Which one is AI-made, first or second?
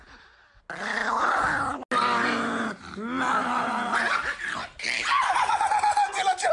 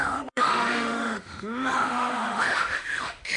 second